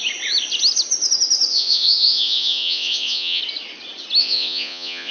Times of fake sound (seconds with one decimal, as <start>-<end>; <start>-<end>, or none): 1.5-3.4; 4.2-5.1